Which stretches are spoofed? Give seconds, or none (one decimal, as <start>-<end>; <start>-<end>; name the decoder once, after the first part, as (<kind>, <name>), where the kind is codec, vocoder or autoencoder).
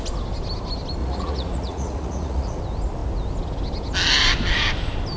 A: 1.0-2.6 (vocoder, Vocos)